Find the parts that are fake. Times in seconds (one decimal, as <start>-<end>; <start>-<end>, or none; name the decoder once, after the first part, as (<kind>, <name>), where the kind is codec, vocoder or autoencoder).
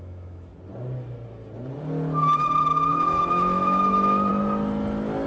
0.0-0.5 (autoencoder, DAC-VAE); 2.9-4.3